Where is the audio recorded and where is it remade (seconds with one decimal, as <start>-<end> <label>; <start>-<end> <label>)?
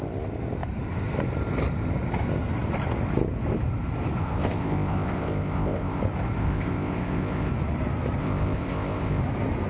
0.0-4.2 recorded; 4.2-6.0 remade; 6.0-6.4 recorded; 6.4-7.5 remade; 7.5-8.2 recorded; 8.2-9.2 remade; 9.2-9.7 recorded